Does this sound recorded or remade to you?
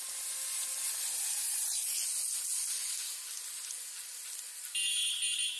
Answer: recorded